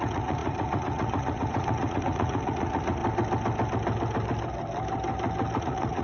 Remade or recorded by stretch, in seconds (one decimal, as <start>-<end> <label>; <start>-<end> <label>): 0.0-3.0 remade; 3.0-5.6 recorded; 5.6-6.0 remade